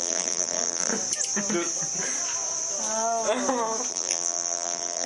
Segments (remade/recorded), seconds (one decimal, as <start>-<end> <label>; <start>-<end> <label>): 0.0-0.9 remade; 0.9-3.9 recorded; 3.9-5.1 remade